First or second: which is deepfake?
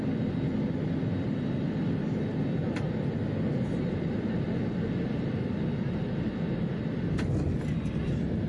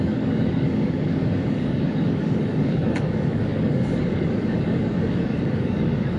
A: second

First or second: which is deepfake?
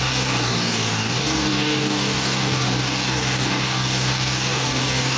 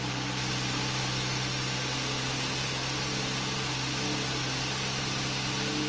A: first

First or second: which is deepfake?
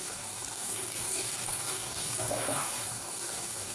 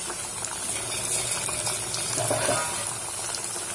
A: first